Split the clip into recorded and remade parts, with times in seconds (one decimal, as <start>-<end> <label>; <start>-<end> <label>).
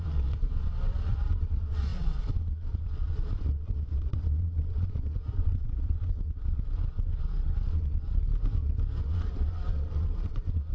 0.0-8.3 remade; 8.3-9.0 recorded; 9.0-10.7 remade